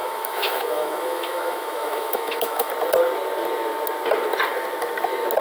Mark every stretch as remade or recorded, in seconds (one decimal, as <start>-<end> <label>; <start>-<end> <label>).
0.0-2.7 remade; 2.7-5.4 recorded